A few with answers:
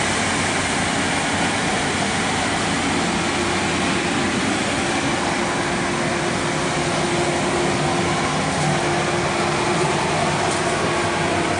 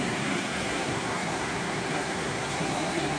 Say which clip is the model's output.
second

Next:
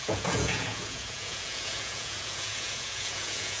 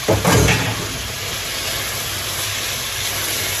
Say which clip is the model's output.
first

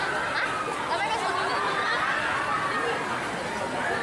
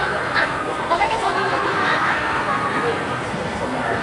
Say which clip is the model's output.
second